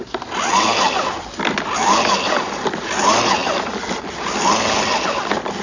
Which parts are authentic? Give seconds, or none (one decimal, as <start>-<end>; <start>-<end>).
0.0-5.6